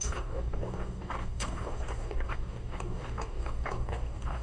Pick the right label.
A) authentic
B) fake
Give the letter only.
B